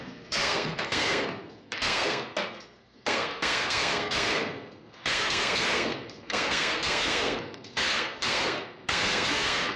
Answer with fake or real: fake